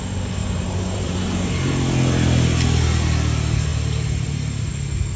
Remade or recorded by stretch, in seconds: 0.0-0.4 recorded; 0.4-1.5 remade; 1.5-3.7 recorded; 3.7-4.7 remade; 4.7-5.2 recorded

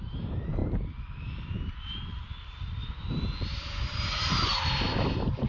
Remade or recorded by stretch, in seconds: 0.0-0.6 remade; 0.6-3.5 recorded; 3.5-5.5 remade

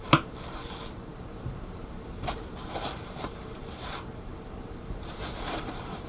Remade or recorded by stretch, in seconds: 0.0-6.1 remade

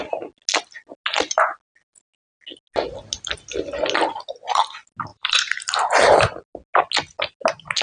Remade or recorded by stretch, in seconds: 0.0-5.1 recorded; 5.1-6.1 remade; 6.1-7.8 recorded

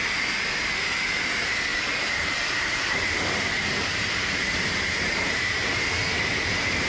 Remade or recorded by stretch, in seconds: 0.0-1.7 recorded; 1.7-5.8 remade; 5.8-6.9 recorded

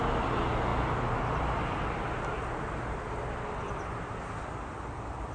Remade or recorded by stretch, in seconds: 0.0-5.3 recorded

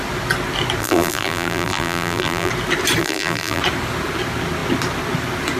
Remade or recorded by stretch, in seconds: 0.0-0.8 recorded; 0.8-2.5 remade; 2.5-3.0 recorded; 3.0-3.6 remade; 3.6-5.6 recorded